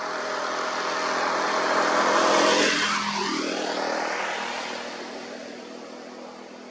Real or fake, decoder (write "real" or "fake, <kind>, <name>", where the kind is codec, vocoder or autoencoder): real